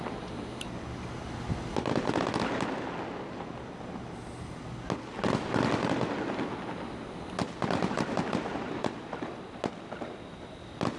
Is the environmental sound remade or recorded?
recorded